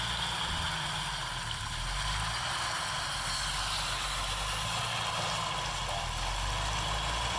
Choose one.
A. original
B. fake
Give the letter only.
A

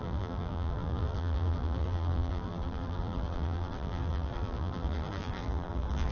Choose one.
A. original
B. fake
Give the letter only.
B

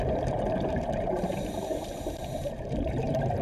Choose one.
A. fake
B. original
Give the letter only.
A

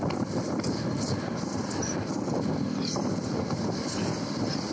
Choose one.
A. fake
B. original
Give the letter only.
A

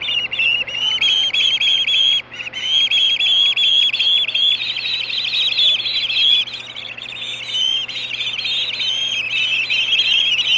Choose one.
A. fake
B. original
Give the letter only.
B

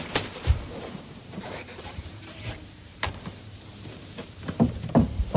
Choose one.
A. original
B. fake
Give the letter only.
B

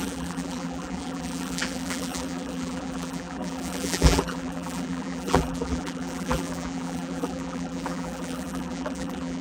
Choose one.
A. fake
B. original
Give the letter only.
A